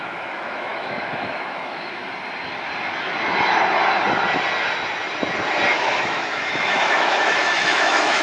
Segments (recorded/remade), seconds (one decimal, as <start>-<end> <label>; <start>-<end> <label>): 0.0-2.0 remade; 2.0-5.7 recorded; 5.7-8.2 remade